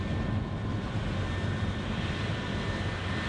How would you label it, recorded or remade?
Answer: recorded